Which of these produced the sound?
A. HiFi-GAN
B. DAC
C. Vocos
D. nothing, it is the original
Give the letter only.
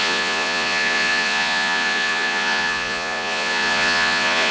C